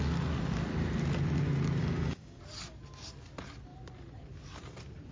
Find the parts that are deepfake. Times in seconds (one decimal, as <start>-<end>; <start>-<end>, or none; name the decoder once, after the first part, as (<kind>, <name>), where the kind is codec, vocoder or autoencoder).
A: 1.8-2.4 (codec, DAC)